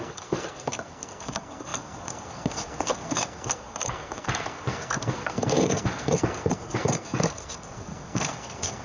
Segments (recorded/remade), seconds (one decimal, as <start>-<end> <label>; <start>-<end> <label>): 0.0-8.8 remade